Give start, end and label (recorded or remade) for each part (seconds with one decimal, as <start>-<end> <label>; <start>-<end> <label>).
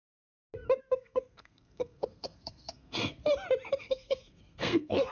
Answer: 0.0-0.8 recorded; 0.8-3.2 remade; 3.2-3.8 recorded; 3.8-5.1 remade